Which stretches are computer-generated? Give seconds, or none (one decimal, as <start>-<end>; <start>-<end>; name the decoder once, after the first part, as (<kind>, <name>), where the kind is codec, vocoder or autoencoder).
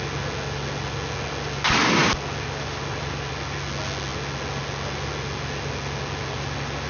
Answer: none